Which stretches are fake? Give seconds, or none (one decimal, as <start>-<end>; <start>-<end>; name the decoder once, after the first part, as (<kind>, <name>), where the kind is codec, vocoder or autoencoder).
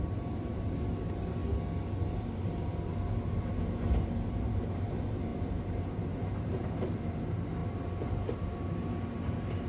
0.0-1.4 (vocoder, BigVGAN v2); 1.9-9.7